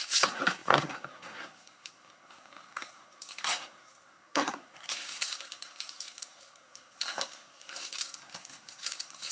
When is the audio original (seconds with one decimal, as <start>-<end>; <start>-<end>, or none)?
none